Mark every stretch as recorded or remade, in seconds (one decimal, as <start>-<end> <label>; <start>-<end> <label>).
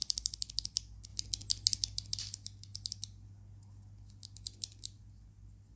0.0-5.8 recorded